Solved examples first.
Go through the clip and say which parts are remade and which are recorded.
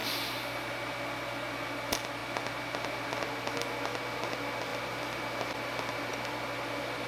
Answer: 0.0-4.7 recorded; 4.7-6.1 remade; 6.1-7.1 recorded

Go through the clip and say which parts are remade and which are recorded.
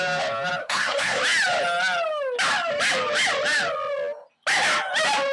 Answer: 0.0-0.6 recorded; 0.6-1.2 remade; 1.2-5.3 recorded